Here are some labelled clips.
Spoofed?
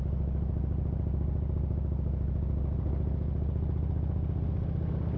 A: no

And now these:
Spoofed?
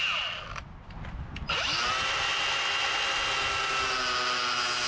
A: no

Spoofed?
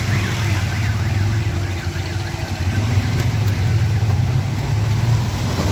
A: no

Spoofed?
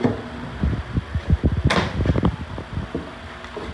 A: no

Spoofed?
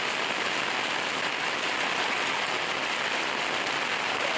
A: no